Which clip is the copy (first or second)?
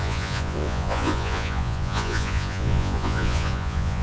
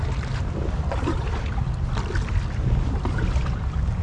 first